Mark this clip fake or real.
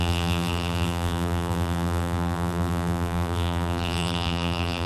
fake